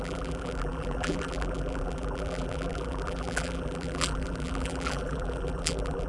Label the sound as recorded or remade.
remade